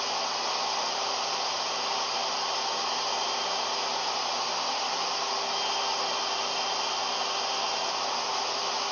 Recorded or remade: recorded